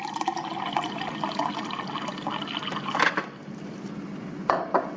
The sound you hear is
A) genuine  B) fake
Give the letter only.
A